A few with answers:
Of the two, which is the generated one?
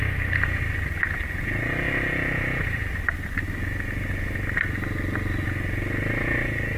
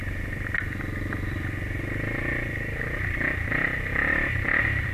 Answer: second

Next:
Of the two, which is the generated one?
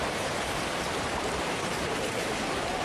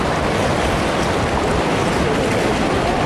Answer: first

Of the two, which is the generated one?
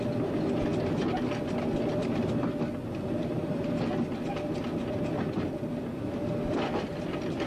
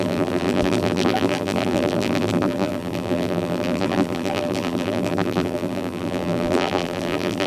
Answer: second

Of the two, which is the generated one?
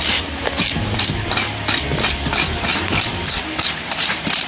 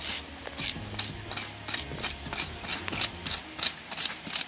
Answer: first